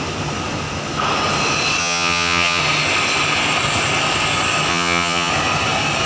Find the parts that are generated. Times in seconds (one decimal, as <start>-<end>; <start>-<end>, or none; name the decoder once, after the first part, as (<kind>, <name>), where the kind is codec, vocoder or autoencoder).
1.8-2.6 (vocoder, HiFi-GAN); 4.7-5.3